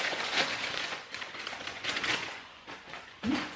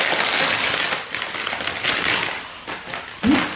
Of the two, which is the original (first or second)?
second